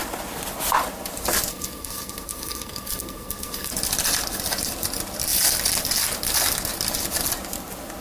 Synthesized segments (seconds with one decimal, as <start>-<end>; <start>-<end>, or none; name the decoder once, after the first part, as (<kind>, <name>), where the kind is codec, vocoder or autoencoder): 1.5-3.7 (codec, SNAC)